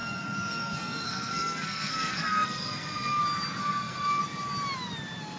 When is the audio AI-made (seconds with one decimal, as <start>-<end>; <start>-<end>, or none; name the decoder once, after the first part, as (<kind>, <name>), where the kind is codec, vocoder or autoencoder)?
0.0-3.2 (codec, SNAC); 3.6-4.2